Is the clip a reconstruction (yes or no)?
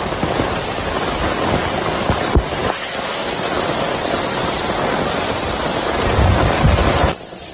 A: no